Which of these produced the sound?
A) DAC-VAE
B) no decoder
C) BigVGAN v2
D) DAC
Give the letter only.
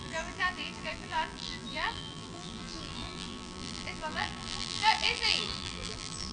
C